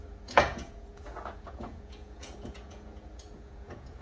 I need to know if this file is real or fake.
fake